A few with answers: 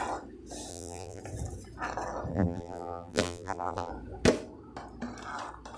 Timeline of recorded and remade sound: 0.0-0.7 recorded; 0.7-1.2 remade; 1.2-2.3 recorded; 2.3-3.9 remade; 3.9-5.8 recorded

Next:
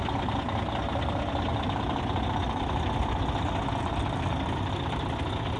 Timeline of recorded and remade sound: 0.0-5.6 recorded

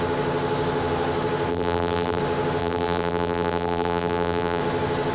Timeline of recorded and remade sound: 0.0-1.5 recorded; 1.5-2.2 remade; 2.2-2.6 recorded; 2.6-4.6 remade; 4.6-5.1 recorded

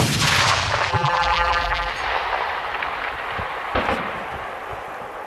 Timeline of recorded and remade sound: 0.0-0.9 recorded; 0.9-1.9 remade; 1.9-5.3 recorded

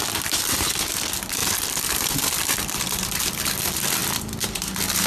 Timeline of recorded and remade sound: 0.0-1.4 recorded; 1.4-3.5 remade; 3.5-4.0 recorded; 4.0-5.1 remade

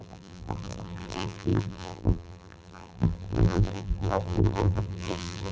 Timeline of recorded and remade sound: 0.0-5.5 remade

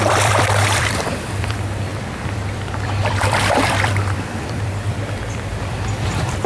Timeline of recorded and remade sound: 0.0-6.5 remade